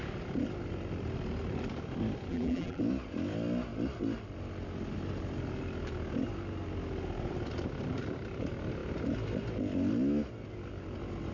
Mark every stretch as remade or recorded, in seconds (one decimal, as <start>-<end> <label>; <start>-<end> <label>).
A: 0.0-2.3 recorded; 2.3-2.8 remade; 2.8-11.3 recorded